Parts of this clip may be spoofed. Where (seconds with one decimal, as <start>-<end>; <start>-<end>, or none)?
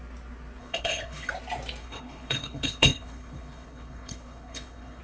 0.6-1.3; 1.8-5.0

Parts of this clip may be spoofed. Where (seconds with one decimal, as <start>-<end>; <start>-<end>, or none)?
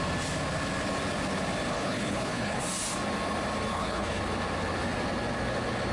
1.7-2.6; 3.7-4.2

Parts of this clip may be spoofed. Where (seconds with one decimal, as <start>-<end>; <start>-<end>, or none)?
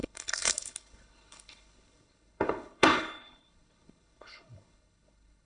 0.0-5.5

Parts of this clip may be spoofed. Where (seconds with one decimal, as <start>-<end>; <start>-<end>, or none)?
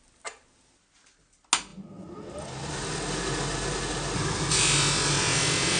none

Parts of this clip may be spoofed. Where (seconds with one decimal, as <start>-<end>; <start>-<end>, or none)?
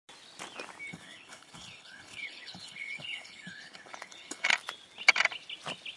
0.9-4.5